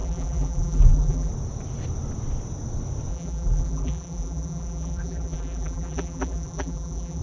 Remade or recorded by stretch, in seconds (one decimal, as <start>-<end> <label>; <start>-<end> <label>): 0.0-1.3 remade; 1.3-3.1 recorded; 3.1-7.2 remade